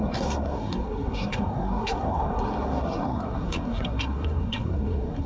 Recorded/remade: remade